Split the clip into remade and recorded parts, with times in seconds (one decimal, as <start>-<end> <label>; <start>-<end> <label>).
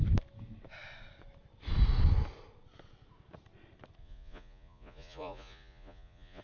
0.0-4.0 recorded; 4.0-6.4 remade